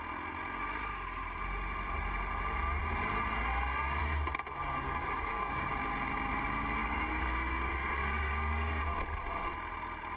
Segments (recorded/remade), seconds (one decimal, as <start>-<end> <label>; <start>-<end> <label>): 0.0-4.6 recorded; 4.6-5.7 remade; 5.7-6.8 recorded; 6.8-8.8 remade; 8.8-10.2 recorded